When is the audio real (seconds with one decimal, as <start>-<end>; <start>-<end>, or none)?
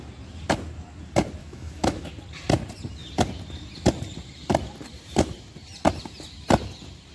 0.0-1.4; 2.1-7.1